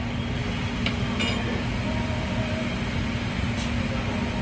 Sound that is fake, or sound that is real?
real